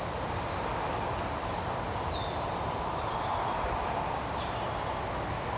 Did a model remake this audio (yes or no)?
no